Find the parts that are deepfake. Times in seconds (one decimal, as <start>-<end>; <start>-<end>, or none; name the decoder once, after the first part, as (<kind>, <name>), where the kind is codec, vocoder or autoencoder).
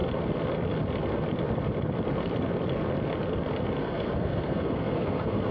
3.8-5.5 (codec, SNAC)